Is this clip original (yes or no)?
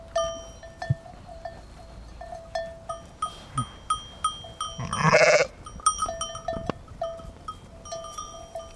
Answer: yes